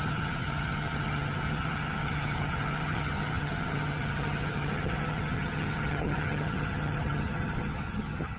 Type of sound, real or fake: fake